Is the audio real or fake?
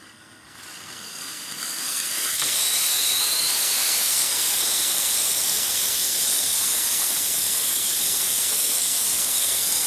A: fake